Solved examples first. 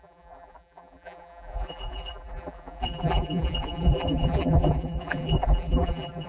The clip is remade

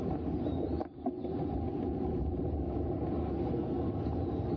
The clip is recorded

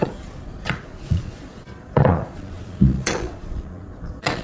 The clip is remade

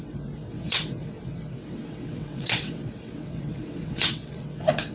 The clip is remade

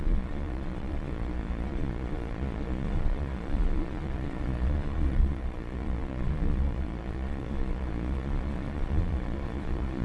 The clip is remade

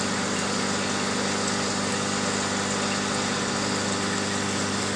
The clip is remade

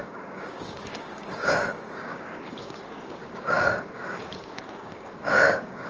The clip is remade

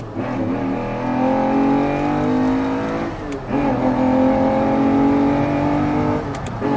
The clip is recorded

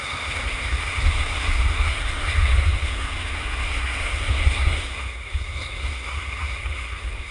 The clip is remade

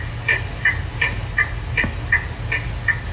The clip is recorded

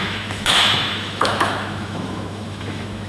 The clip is remade